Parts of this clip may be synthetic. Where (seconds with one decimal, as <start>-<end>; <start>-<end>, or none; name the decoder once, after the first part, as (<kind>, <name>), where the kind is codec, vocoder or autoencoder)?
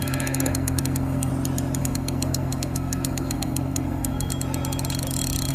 0.0-1.3 (codec, SNAC); 1.8-4.3